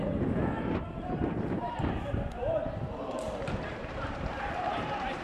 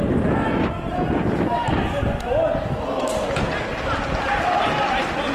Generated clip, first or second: first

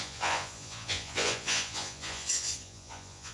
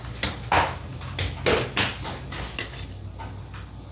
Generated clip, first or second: first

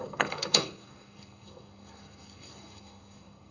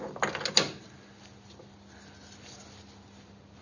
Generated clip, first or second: first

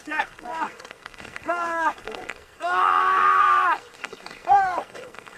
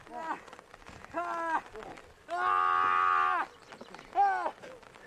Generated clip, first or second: first